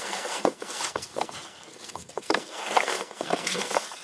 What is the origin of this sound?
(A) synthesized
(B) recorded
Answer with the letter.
A